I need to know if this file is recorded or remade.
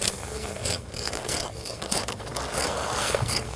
remade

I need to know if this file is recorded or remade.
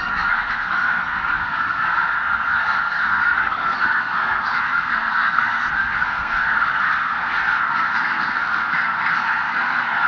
remade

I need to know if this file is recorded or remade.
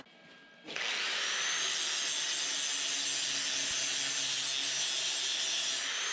recorded